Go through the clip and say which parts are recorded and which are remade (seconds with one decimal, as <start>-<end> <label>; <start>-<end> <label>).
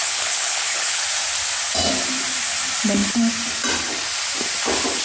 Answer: 0.0-1.0 remade; 1.0-5.0 recorded